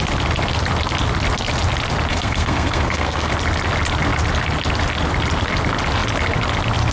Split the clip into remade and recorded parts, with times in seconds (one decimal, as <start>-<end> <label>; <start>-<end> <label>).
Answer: 0.0-2.1 recorded; 2.1-3.3 remade; 3.3-6.9 recorded